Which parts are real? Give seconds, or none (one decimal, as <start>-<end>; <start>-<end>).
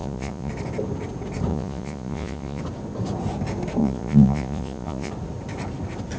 0.5-1.5; 2.6-3.8; 5.1-6.2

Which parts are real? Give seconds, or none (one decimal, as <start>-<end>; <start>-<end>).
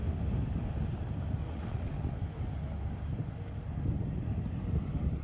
0.0-1.4; 2.1-5.2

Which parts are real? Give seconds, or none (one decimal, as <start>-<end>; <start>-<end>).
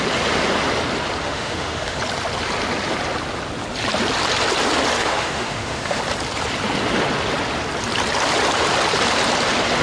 0.0-1.2; 2.0-5.0; 6.0-9.8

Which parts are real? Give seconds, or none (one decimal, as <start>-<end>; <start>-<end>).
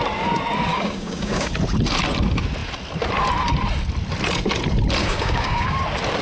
0.0-0.7; 1.5-5.0; 5.8-6.2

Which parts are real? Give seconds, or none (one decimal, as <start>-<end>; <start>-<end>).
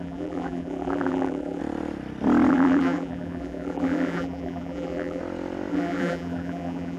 1.6-2.5; 5.2-5.7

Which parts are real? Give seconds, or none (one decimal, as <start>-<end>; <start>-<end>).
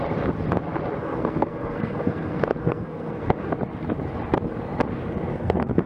0.0-1.0; 3.5-5.3